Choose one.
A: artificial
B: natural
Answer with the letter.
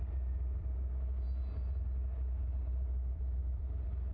A